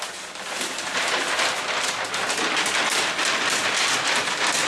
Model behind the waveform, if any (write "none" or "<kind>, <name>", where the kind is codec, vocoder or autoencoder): none